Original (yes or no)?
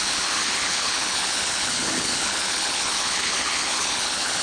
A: no